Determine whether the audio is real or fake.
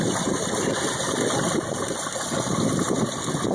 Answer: real